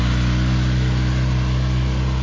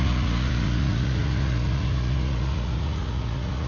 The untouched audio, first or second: first